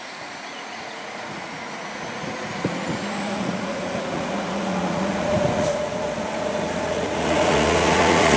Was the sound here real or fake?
fake